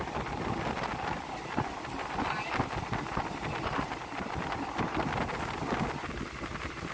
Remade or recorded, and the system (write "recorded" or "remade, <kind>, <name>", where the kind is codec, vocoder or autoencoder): recorded